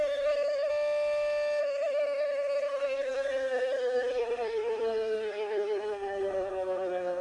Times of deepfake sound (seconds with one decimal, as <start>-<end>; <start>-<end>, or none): 0.0-0.7; 1.6-7.2